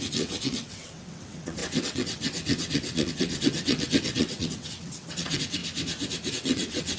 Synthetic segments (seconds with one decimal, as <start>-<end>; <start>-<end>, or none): 0.0-5.6; 6.3-7.0